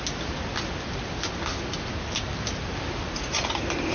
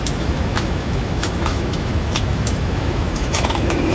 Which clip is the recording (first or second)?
first